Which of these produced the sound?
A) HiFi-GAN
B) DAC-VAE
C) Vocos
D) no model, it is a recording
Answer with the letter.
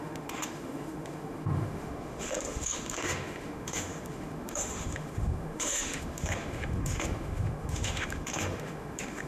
B